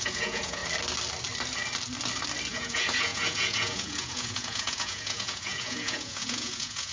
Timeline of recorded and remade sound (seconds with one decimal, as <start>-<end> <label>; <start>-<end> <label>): 0.0-0.6 remade; 0.6-2.5 recorded; 2.5-6.9 remade